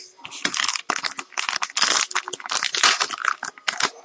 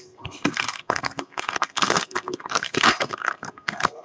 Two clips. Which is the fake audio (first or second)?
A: second